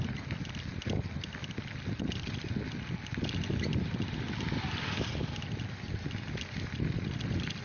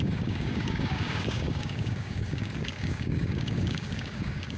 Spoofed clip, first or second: second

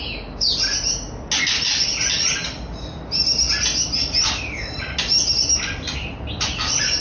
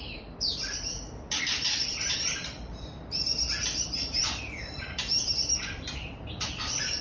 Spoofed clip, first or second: second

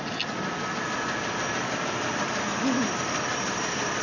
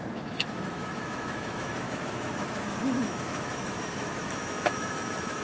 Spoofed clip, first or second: second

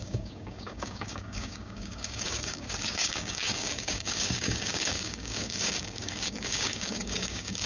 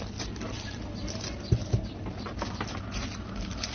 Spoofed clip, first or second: first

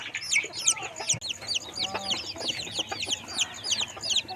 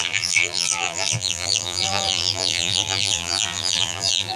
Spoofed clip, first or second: second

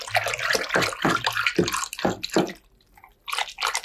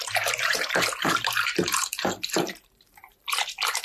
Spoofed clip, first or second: second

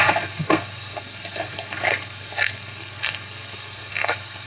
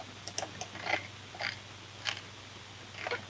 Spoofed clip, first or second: first